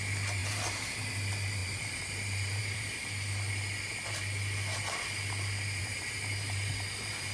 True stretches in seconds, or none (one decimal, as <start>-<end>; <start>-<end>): 0.0-0.4; 1.1-1.6; 3.1-5.8; 6.8-7.3

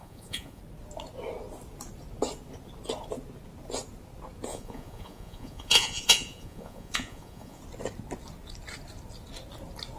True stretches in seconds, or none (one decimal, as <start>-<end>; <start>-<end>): 0.6-4.5; 7.6-10.0

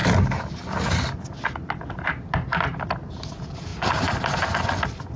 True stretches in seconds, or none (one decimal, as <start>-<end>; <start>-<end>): 0.0-3.7; 4.5-5.2

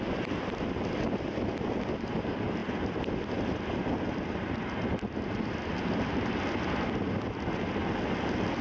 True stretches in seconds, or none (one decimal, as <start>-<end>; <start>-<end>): 0.0-8.6

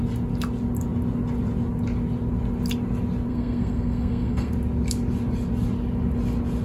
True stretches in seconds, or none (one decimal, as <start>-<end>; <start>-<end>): 0.0-3.3; 4.5-6.6

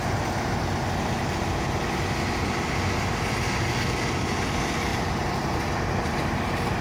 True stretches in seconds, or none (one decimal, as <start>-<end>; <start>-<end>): 0.0-4.9; 5.6-6.8